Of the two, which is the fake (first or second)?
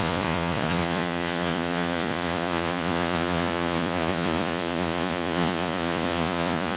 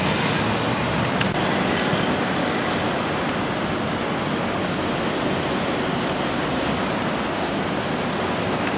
first